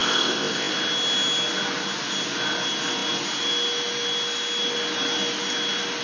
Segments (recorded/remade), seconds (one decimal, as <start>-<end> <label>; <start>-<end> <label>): 0.0-0.7 remade; 0.7-6.0 recorded